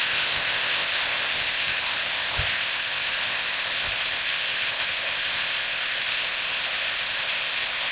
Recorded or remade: remade